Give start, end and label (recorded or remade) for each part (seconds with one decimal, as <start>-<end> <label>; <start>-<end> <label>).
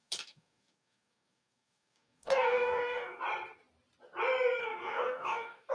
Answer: 0.0-3.2 remade; 3.2-4.6 recorded; 4.6-5.7 remade